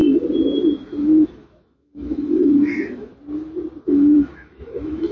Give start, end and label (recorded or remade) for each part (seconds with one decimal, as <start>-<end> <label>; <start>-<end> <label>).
0.0-0.7 recorded; 0.7-3.1 remade; 3.1-3.8 recorded; 3.8-5.1 remade